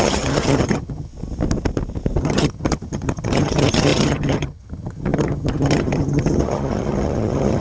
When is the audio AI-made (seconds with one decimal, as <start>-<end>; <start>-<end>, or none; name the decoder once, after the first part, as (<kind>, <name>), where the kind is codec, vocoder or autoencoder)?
0.0-1.1 (vocoder, HiFi-GAN); 2.2-7.6